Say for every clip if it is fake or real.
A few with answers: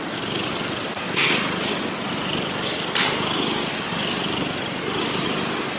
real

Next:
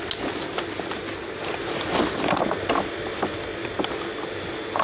real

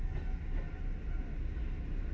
real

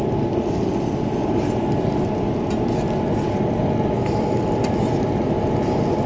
real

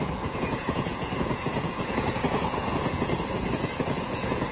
fake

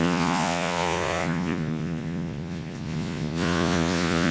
fake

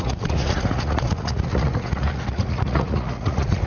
fake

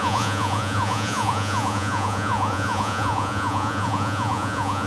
fake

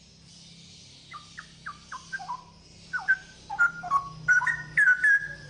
real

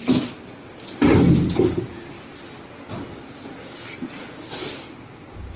real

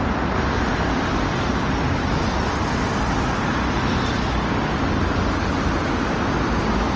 real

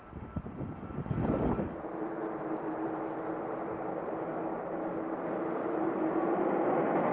real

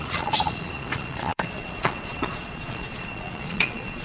fake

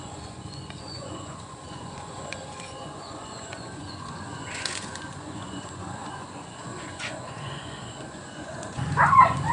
fake